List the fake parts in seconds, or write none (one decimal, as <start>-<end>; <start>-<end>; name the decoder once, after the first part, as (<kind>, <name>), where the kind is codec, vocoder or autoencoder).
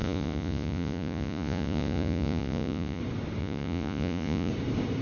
0.0-3.0 (vocoder, Vocos); 3.4-4.5